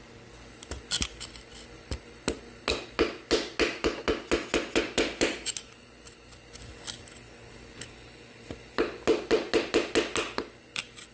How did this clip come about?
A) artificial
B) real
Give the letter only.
B